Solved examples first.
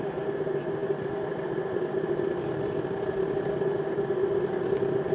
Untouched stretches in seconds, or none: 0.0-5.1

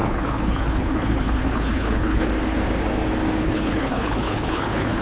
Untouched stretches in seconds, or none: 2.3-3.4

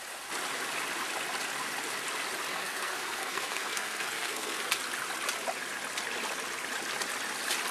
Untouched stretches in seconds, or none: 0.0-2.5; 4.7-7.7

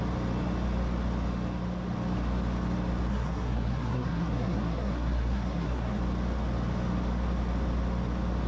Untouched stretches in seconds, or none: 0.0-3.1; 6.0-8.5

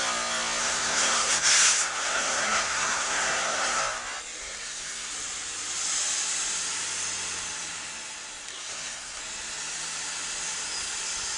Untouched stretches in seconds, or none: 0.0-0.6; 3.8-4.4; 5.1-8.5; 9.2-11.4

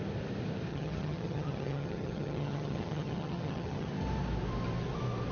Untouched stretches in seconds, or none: 0.0-0.7; 3.9-5.3